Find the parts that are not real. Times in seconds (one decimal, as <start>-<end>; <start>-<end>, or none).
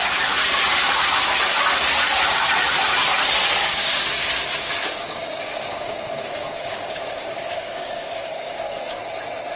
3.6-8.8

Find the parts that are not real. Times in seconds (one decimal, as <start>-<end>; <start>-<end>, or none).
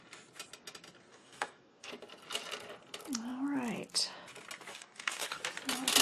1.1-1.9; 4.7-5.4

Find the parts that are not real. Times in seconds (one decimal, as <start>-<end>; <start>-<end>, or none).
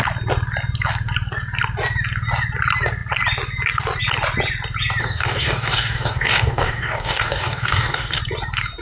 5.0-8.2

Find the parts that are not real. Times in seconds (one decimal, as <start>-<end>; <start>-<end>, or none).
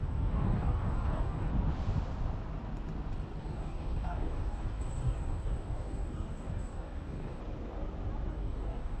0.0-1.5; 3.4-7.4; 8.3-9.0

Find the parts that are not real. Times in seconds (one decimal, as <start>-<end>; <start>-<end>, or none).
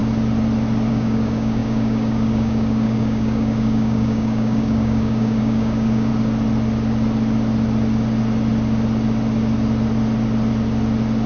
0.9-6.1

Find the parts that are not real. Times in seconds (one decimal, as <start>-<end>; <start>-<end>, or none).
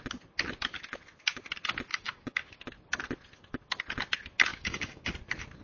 1.9-2.6; 4.5-5.1